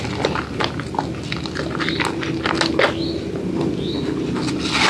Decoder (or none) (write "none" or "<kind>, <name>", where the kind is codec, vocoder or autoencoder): none